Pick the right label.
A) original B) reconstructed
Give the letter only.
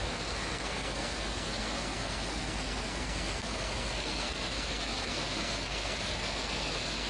B